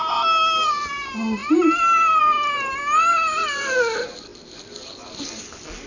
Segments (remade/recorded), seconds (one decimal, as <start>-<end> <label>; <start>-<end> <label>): 0.0-5.9 recorded